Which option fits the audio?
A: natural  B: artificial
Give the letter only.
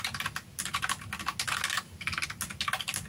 A